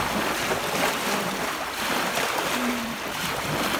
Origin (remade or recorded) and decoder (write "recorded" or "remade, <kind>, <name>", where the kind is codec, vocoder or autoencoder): remade, vocoder, BigVGAN v2